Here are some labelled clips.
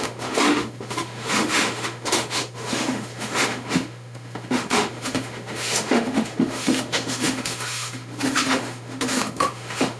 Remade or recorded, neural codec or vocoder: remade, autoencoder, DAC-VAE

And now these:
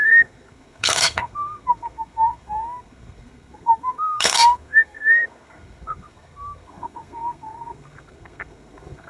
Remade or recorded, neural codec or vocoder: remade, codec, SNAC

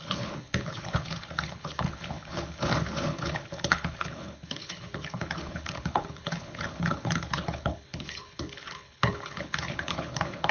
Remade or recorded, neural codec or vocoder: remade, codec, HILCodec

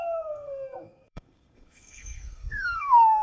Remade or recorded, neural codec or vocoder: remade, codec, SNAC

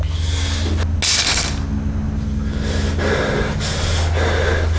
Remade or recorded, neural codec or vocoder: recorded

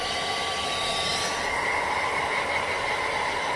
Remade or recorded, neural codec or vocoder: recorded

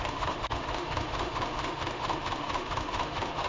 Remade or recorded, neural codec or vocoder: remade, autoencoder, DAC-VAE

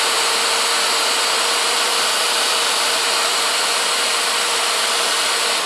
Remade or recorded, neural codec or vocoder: remade, vocoder, BigVGAN v2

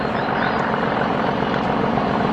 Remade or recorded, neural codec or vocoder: recorded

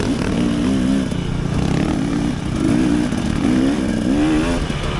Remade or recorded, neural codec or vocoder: recorded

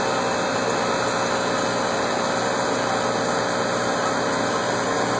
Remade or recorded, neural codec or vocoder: recorded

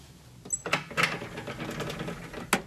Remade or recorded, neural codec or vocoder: recorded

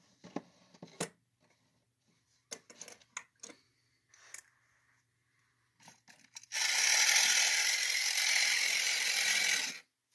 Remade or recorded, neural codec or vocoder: recorded